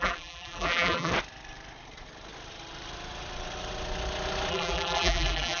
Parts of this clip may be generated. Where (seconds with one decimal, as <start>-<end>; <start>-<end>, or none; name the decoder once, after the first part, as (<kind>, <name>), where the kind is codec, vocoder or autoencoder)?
0.0-1.1 (vocoder, BigVGAN v2); 4.5-5.6